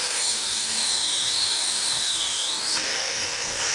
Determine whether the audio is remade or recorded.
remade